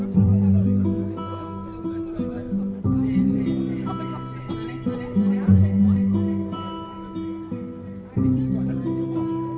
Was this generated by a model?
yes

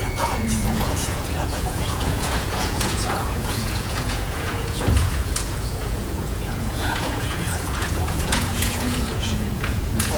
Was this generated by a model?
yes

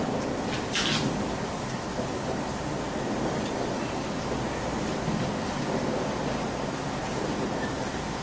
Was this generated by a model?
no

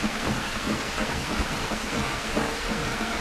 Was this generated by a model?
yes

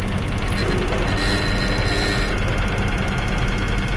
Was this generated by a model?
no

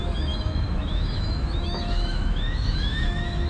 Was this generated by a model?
yes